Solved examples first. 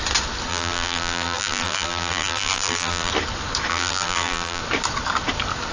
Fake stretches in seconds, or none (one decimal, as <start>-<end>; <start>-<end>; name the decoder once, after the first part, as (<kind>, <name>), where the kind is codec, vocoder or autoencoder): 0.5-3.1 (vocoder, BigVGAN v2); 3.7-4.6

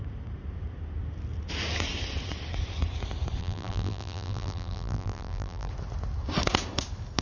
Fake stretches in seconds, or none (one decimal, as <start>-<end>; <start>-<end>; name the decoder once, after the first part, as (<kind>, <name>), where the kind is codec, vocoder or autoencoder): 3.4-5.7 (vocoder, BigVGAN v2)

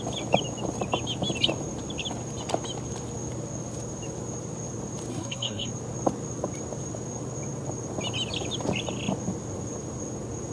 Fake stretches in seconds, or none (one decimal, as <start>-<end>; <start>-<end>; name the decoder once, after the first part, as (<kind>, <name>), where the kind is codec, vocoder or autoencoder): 5.1-5.7 (codec, SNAC)